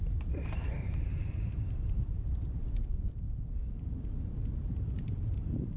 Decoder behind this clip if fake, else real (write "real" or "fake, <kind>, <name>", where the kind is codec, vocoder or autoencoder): fake, vocoder, BigVGAN v2